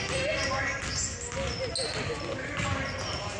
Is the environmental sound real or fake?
real